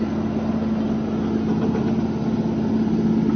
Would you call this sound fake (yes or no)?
no